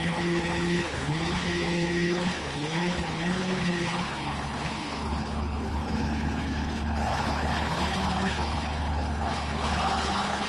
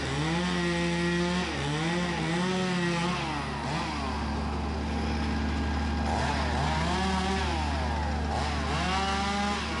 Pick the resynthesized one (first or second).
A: first